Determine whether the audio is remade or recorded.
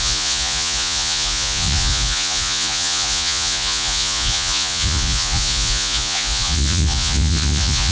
remade